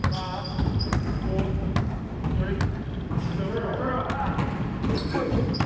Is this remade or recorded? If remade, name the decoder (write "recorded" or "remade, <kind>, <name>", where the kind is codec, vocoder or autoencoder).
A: recorded